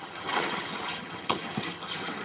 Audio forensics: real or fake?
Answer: fake